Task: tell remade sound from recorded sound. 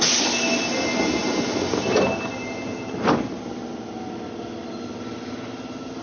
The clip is recorded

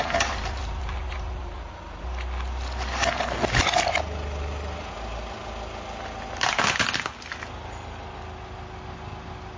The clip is recorded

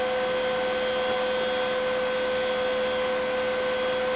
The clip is recorded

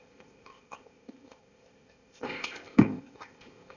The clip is remade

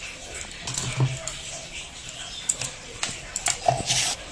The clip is remade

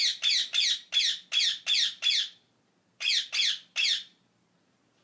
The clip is recorded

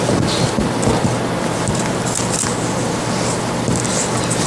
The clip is recorded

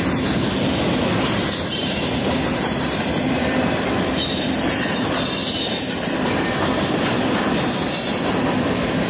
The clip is recorded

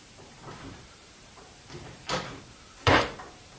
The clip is remade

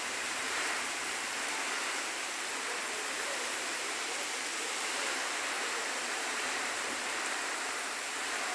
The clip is remade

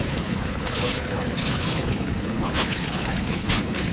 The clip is remade